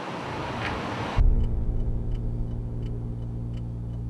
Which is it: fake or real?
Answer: real